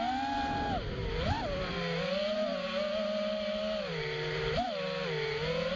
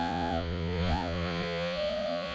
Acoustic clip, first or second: first